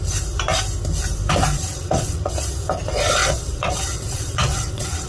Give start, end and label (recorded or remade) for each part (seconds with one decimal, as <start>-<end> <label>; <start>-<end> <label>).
0.0-1.7 recorded; 1.7-2.3 remade; 2.3-3.2 recorded; 3.2-5.1 remade